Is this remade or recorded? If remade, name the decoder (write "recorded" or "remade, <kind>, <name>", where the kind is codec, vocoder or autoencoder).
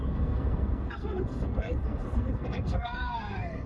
remade, codec, SNAC